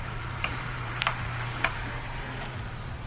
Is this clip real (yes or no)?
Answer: no